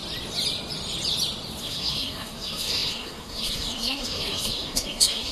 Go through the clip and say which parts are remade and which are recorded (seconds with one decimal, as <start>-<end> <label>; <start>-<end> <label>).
0.0-1.6 recorded; 1.6-5.3 remade